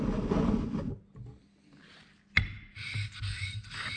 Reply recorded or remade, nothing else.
recorded